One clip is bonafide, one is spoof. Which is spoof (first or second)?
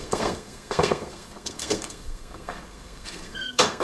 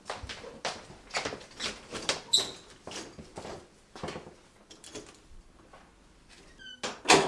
first